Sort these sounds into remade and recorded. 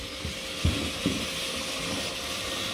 recorded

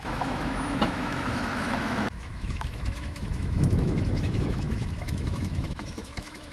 remade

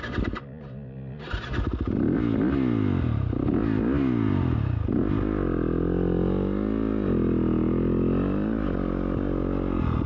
recorded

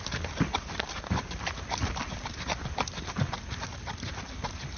remade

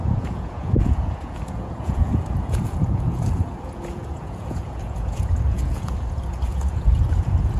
remade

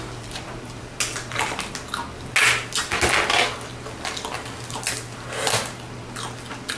recorded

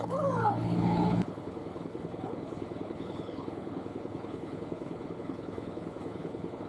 remade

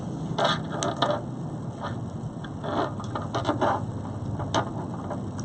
recorded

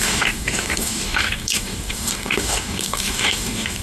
remade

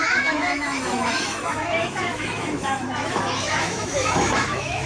remade